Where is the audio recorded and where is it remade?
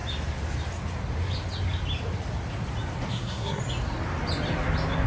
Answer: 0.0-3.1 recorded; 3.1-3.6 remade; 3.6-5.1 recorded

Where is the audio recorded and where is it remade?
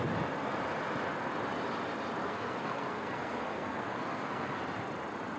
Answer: 0.0-2.2 recorded; 2.2-4.6 remade; 4.6-5.4 recorded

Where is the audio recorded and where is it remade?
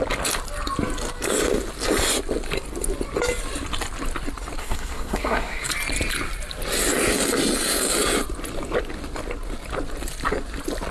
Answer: 0.0-4.6 recorded; 4.6-5.7 remade; 5.7-10.9 recorded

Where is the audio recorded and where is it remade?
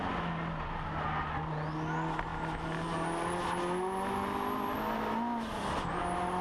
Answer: 0.0-6.4 recorded